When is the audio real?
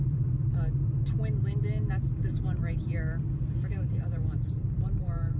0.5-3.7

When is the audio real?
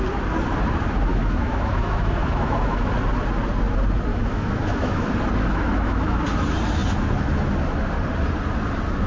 0.0-1.1; 2.9-4.1; 5.1-5.5; 6.2-9.1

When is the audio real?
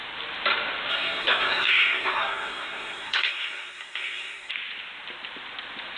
0.0-0.9; 4.5-6.0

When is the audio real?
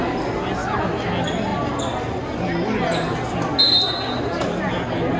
0.0-5.2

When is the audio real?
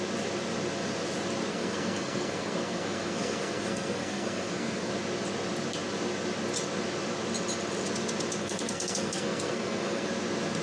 0.0-1.5; 4.9-8.4; 10.1-10.6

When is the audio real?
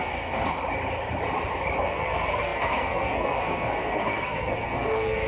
0.4-1.8